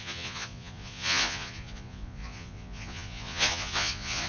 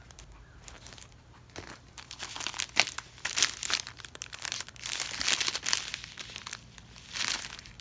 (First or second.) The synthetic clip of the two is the first